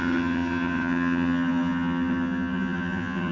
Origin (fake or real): fake